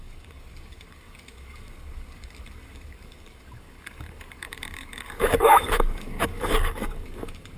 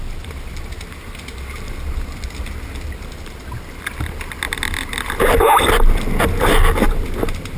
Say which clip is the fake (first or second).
first